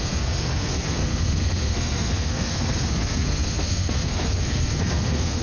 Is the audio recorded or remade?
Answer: remade